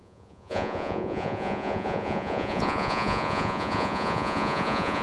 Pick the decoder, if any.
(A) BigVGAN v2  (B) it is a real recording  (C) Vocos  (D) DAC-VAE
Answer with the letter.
C